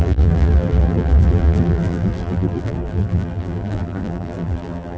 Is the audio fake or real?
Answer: fake